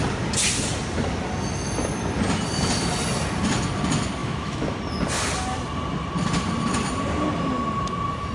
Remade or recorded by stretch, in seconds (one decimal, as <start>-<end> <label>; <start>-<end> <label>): 0.0-4.2 recorded; 4.2-4.8 remade; 4.8-8.3 recorded